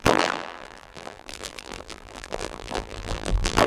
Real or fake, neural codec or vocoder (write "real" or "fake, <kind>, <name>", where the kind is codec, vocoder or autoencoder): fake, vocoder, BigVGAN v2